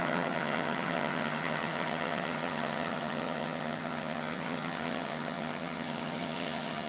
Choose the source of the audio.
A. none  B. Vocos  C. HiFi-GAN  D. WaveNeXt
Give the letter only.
C